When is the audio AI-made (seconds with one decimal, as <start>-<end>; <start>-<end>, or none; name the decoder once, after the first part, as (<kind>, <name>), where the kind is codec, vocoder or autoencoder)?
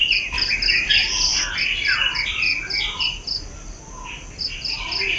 none